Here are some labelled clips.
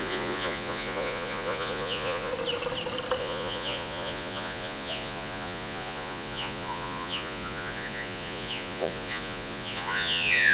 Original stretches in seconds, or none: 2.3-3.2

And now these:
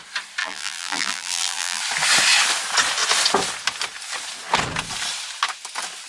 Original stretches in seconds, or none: 0.0-0.4; 1.8-6.1

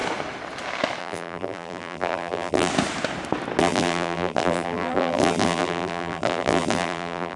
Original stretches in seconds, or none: 0.0-1.0; 2.7-3.6